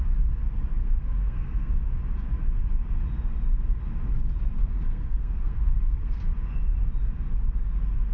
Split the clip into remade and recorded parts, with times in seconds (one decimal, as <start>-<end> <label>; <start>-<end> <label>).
0.0-0.8 recorded; 0.8-1.7 remade; 1.7-4.6 recorded; 4.6-6.2 remade; 6.2-8.1 recorded